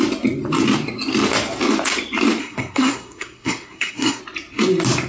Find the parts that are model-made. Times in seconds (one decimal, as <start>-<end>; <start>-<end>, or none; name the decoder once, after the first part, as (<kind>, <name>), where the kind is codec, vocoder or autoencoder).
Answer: 2.4-4.2 (codec, SNAC)